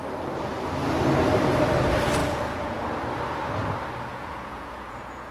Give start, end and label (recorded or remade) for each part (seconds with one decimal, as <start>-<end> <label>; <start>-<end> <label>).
0.0-2.2 recorded; 2.2-2.8 remade; 2.8-4.1 recorded; 4.1-5.3 remade